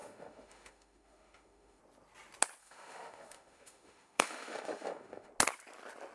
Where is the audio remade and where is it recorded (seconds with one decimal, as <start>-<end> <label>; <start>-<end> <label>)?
0.0-1.8 remade; 1.8-2.6 recorded; 2.6-5.3 remade; 5.3-6.1 recorded